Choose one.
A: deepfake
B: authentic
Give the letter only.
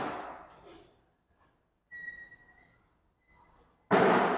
B